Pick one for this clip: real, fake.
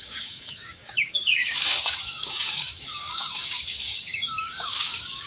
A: fake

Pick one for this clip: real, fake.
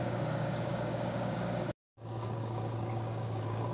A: fake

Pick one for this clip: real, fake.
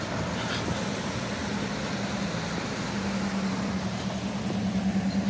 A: real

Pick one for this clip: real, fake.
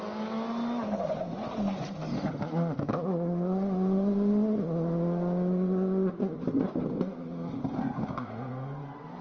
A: real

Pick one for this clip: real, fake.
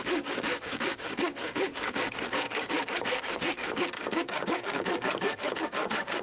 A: fake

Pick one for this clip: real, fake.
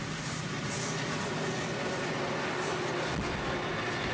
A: real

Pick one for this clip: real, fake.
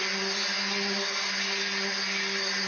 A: real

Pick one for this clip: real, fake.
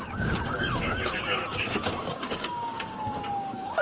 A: fake